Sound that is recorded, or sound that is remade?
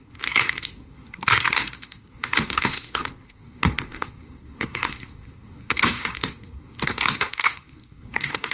remade